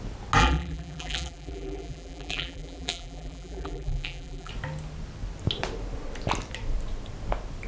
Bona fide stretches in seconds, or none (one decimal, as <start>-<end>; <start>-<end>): 0.0-0.4; 4.5-7.7